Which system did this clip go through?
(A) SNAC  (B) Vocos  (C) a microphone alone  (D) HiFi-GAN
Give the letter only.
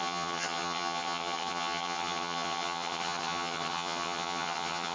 D